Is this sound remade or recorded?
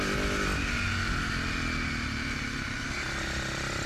recorded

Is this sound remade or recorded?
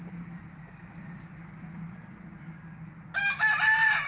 recorded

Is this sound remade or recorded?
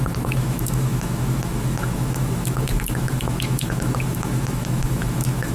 remade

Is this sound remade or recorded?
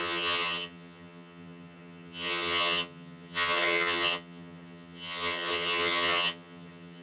remade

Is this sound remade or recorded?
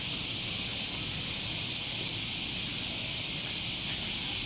recorded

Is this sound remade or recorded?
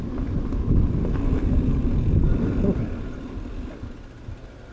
recorded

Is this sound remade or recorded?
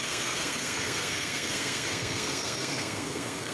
remade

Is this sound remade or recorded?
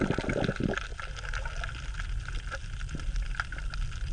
recorded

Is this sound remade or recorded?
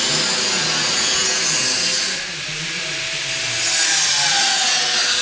recorded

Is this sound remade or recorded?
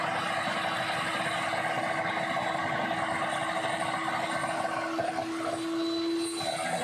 recorded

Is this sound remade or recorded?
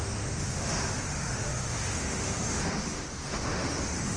remade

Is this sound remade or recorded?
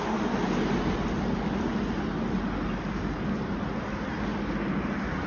recorded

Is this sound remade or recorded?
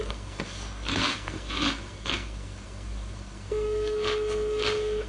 remade